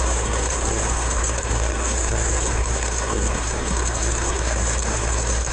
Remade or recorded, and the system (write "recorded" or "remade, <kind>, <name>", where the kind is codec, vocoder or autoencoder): remade, codec, SNAC